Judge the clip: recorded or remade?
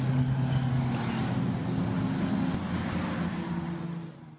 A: recorded